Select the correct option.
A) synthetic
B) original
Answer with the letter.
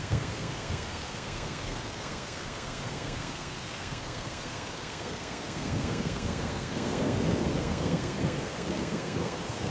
A